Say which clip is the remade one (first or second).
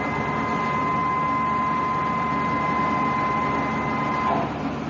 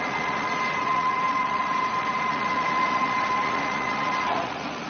second